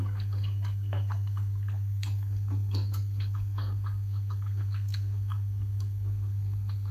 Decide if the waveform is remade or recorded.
remade